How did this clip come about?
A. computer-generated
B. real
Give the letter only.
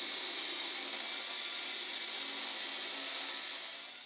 B